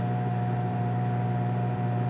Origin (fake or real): fake